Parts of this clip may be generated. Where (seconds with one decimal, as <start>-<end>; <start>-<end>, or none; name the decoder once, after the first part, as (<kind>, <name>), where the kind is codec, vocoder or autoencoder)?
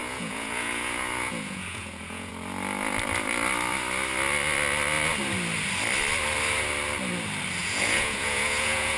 0.0-2.3 (vocoder, Vocos); 7.6-9.0